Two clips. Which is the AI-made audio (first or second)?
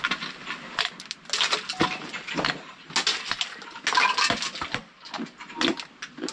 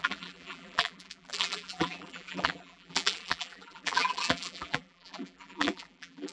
second